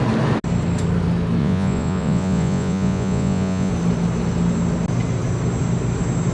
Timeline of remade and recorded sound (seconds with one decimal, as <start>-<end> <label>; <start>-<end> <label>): 0.0-1.4 recorded; 1.4-3.7 remade; 3.7-6.3 recorded